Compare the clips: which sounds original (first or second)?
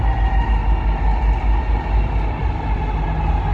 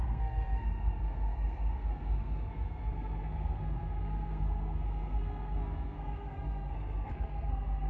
first